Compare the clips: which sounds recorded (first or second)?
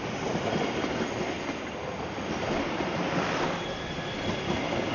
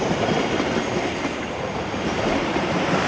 first